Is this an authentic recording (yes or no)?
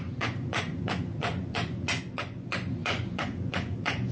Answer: no